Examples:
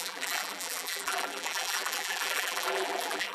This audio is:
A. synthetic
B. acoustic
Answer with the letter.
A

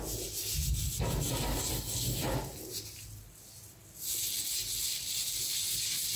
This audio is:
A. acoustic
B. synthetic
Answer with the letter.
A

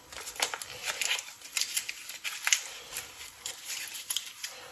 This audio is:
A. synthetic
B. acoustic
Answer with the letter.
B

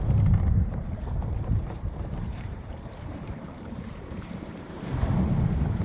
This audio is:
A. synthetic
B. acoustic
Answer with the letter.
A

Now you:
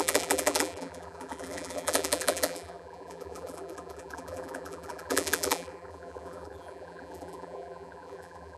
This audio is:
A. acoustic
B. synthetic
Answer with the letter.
B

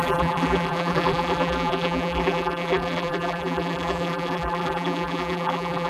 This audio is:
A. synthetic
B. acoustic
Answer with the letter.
A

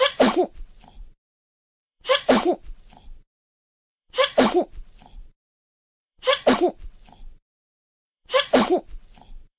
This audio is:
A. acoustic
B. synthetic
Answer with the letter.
B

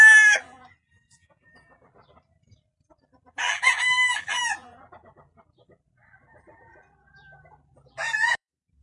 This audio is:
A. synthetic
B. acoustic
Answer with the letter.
A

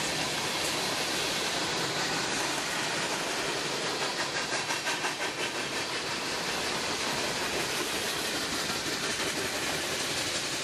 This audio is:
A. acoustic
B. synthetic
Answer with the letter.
B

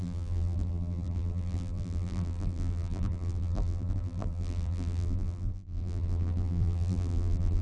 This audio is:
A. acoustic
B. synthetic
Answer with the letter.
B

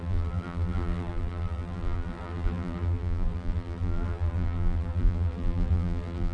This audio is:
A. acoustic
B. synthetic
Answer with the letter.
B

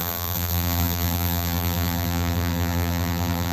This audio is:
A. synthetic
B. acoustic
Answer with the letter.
A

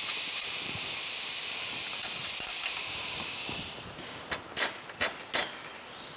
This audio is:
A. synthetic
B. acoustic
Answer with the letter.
B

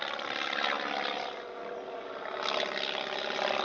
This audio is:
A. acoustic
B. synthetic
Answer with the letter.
A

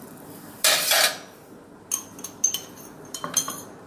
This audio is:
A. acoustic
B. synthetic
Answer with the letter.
A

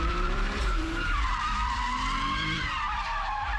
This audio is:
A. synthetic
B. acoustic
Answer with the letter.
A